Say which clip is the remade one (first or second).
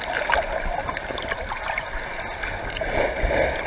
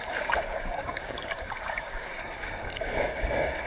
second